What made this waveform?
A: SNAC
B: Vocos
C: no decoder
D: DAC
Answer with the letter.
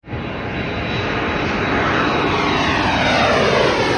C